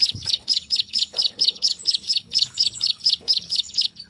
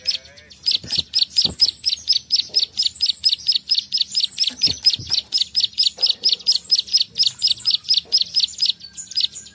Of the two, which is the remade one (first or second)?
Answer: first